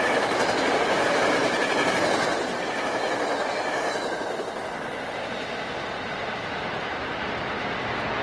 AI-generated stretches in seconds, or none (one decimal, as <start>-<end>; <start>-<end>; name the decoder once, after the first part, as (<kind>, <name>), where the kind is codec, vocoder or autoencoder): none